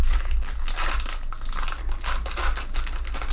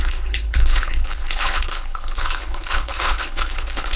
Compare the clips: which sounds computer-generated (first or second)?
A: second